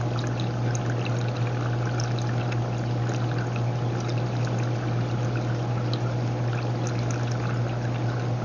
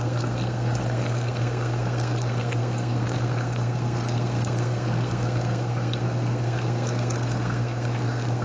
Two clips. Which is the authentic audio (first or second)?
first